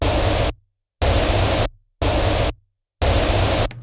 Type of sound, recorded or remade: recorded